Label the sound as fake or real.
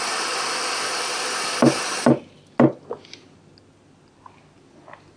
real